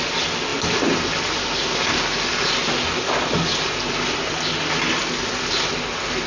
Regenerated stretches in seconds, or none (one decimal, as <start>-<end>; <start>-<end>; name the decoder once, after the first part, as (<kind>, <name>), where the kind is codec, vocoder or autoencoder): none